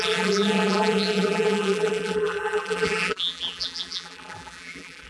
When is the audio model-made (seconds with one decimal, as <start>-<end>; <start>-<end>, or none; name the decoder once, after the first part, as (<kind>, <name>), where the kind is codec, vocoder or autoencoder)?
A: 0.0-5.1 (vocoder, BigVGAN v2)